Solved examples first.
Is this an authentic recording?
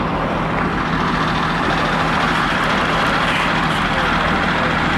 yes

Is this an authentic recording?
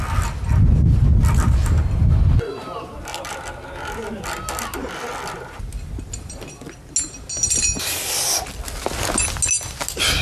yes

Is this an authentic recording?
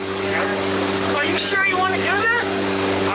no